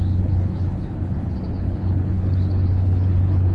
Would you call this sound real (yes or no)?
no